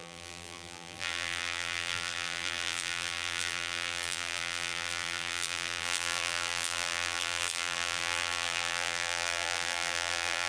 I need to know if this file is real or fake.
fake